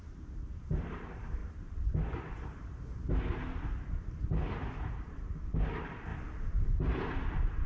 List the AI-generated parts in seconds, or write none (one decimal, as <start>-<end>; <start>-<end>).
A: 0.0-1.4; 2.3-3.4; 4.1-6.1; 6.7-7.7